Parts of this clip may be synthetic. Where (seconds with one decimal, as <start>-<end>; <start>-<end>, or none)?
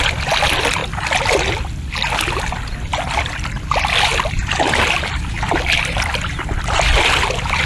none